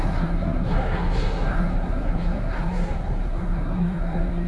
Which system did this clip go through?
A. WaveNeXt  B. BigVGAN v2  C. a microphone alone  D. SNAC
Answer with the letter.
D